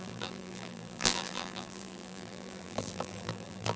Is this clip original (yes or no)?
no